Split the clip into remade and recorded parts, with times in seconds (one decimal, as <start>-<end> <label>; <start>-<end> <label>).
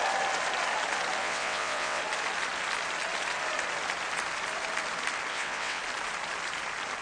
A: 0.0-1.2 recorded; 1.2-2.0 remade; 2.0-5.3 recorded; 5.3-5.8 remade; 5.8-7.0 recorded